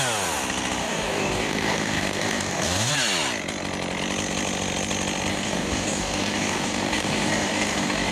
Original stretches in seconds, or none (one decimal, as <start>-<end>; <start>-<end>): 0.0-0.8; 2.9-5.3